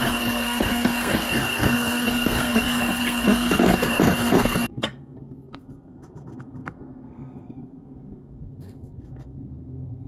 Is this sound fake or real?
fake